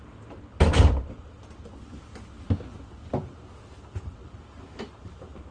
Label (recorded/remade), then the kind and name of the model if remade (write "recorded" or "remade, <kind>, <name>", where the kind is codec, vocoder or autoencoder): recorded